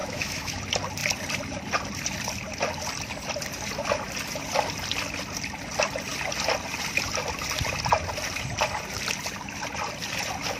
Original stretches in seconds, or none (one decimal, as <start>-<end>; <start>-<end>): 0.6-10.6

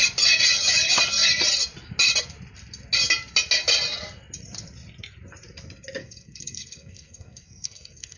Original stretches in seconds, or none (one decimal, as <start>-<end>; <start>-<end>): 0.0-6.0

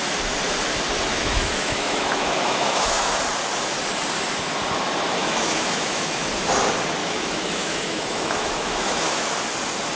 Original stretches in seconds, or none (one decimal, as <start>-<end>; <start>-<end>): 0.0-1.1; 3.2-5.2; 6.3-7.0; 9.4-10.0

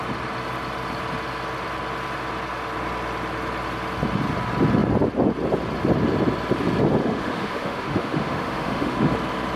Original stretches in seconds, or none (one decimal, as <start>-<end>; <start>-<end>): 0.0-7.0; 9.1-9.6

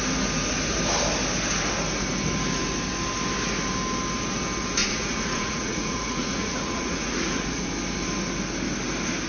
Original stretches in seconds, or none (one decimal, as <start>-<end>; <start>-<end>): 0.0-4.8; 7.7-9.3

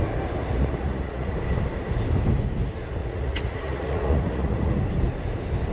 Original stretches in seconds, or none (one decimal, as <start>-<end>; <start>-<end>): 0.0-0.4; 1.3-3.0; 4.8-5.7